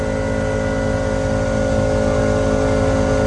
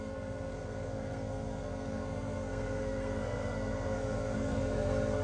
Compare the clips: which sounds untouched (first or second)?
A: first